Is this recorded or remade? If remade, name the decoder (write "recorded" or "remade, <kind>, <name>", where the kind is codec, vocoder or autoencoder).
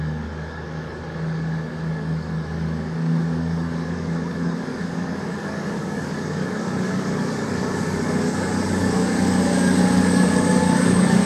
remade, codec, DAC